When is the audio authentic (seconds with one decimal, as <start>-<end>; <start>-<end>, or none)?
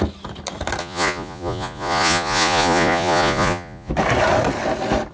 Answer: 0.0-0.8; 3.9-5.1